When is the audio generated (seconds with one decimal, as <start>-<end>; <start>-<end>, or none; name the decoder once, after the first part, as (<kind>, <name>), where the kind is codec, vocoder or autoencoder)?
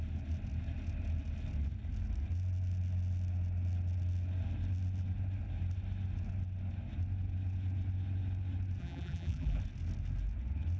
8.8-9.6 (vocoder, BigVGAN v2)